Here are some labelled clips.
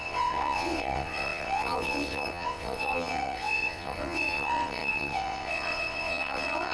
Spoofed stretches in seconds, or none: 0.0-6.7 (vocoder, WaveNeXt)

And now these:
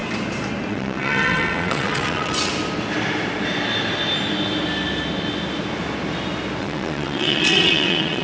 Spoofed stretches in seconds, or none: 0.7-2.5 (vocoder, WaveNeXt); 6.6-8.2

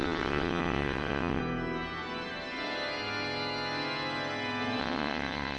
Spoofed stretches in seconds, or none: 0.0-1.4 (vocoder, WaveNeXt); 4.8-5.6